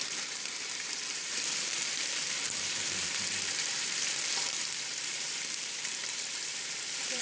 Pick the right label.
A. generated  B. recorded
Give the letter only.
A